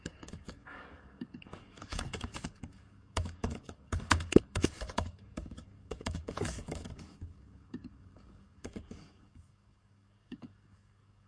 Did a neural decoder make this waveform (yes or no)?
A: yes